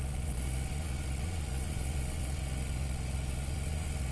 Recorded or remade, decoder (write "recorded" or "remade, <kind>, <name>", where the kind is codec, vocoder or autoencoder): remade, vocoder, Vocos